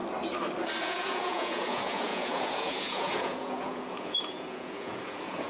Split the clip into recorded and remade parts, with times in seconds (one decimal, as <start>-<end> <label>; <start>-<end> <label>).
0.0-0.8 recorded; 0.8-5.5 remade